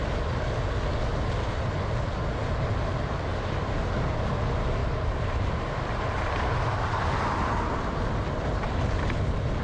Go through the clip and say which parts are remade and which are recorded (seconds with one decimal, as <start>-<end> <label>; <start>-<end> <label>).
0.0-4.8 recorded; 4.8-9.6 remade